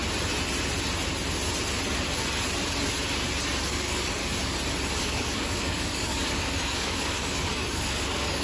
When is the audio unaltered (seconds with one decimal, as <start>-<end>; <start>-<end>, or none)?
0.0-3.6; 4.2-5.0